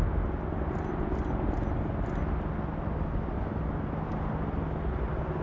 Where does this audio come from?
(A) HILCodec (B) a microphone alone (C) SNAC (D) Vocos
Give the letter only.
B